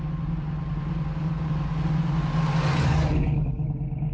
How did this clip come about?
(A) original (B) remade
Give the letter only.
A